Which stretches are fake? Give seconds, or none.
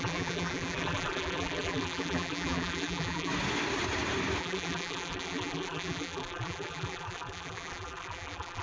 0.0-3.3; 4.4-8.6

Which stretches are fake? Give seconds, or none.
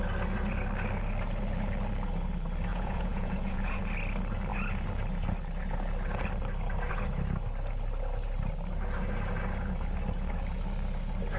2.7-3.8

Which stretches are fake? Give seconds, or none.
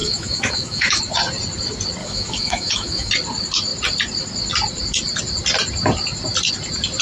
0.0-1.0; 2.0-3.1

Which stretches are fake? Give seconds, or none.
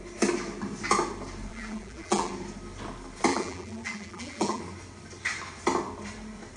1.5-2.3; 3.3-4.6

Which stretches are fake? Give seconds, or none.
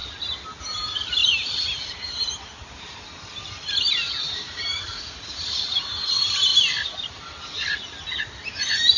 0.6-1.2; 4.2-6.5; 8.2-9.0